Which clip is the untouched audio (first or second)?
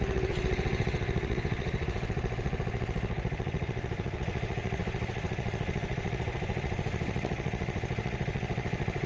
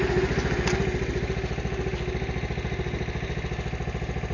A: second